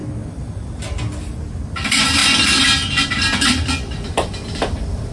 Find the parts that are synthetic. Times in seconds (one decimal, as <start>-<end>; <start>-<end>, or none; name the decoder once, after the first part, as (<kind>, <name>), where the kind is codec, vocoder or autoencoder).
none

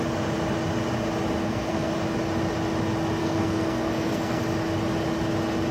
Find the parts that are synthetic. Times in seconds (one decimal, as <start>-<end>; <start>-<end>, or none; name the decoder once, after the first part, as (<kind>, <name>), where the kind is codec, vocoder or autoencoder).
1.4-1.9 (codec, SNAC); 3.2-4.4

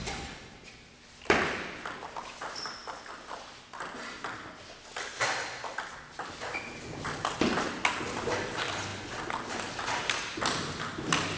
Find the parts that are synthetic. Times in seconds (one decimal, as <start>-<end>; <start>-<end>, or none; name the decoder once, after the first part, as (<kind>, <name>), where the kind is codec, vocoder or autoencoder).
none

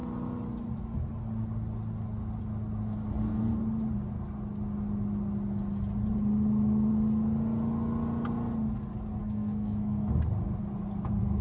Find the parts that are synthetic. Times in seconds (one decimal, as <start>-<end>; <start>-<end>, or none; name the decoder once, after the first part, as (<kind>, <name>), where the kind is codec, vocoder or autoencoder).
9.2-10.1 (codec, SNAC)

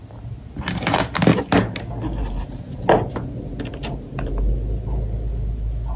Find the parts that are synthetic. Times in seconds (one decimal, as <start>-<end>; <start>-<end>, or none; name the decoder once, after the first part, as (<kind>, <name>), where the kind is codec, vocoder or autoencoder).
none

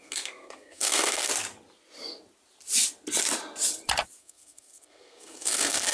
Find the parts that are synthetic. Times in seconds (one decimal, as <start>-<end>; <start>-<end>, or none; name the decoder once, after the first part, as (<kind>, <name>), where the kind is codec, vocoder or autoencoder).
0.0-1.3 (codec, SNAC); 4.2-5.9